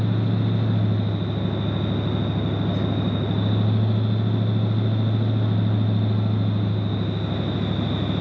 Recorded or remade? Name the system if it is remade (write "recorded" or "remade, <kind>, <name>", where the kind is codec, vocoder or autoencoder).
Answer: recorded